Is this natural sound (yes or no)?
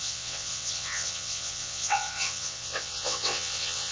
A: no